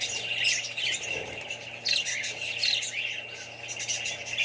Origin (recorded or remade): recorded